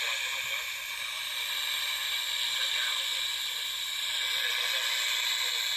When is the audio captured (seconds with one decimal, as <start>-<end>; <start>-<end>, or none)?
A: 0.0-5.8